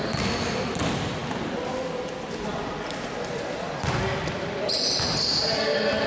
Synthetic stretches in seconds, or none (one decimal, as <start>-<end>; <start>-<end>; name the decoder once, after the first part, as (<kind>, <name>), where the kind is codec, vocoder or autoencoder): 2.5-5.0 (vocoder, BigVGAN v2)